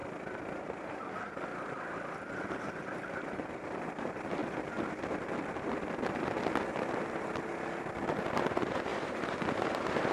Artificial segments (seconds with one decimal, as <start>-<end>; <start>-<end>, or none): 0.6-1.5; 3.1-4.4; 8.5-10.1